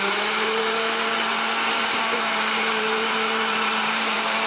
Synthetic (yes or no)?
yes